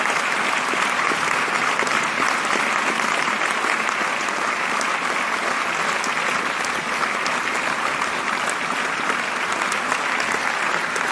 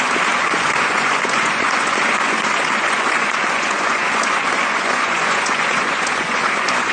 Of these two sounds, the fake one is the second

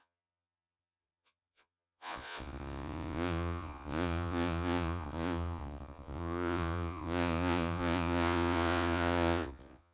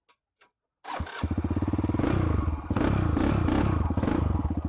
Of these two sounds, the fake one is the first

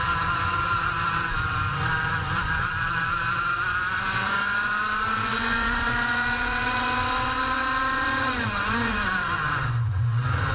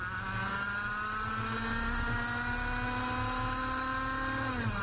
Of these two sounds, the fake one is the first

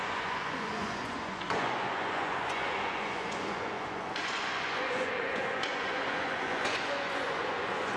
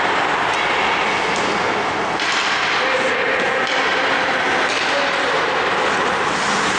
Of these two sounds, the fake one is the first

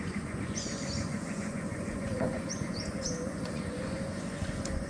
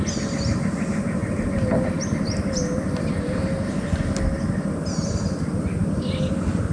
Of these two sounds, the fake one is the first